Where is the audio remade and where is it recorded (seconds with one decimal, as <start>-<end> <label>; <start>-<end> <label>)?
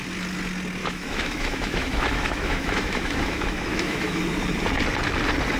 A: 0.0-0.8 recorded; 0.8-4.2 remade; 4.2-5.6 recorded